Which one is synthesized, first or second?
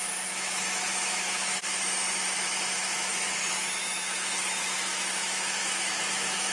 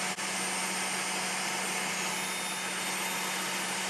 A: first